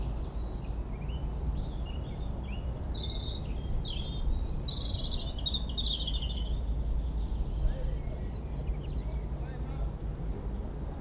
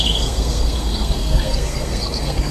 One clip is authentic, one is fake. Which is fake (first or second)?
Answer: second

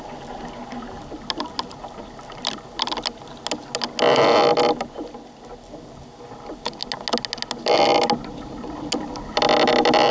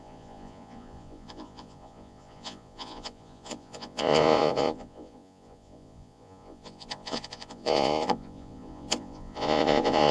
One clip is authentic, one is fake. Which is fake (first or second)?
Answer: second